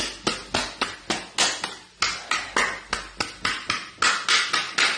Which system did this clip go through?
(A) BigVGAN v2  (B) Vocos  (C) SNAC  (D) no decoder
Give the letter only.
D